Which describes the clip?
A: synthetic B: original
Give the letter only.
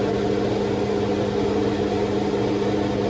B